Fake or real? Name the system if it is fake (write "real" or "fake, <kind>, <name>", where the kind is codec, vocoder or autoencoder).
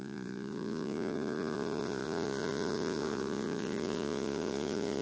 fake, vocoder, Vocos